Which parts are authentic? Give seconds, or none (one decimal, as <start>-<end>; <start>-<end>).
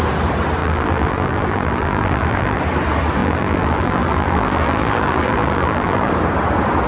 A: 0.0-0.6; 2.6-3.2; 6.1-6.9